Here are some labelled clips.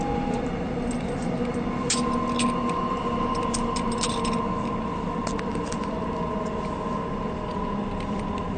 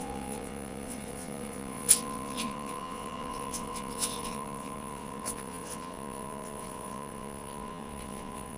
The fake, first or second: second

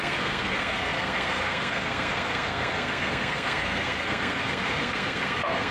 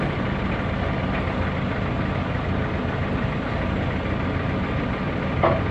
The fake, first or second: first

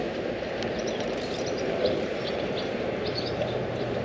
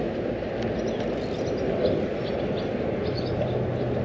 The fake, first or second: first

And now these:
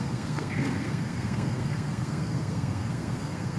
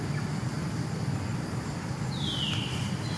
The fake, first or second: first